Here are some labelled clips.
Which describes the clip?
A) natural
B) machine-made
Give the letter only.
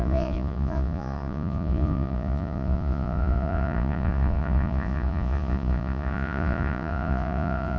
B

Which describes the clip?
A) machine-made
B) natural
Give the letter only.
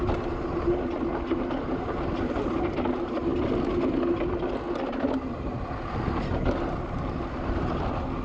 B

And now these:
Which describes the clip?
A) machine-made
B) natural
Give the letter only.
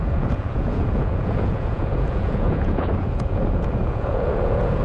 A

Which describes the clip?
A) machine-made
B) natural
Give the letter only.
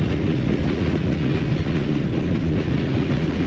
A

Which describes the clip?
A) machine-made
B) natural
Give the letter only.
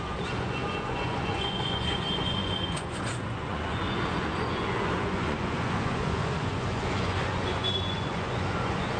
A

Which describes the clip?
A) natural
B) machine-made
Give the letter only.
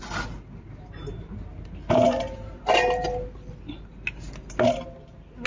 A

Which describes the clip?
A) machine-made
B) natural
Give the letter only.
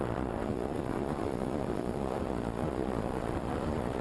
A